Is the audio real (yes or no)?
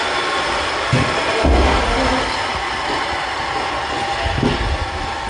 yes